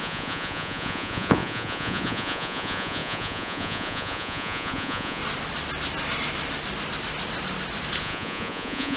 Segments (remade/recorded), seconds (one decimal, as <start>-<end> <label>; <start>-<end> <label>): 0.0-5.2 remade; 5.2-8.0 recorded; 8.0-9.0 remade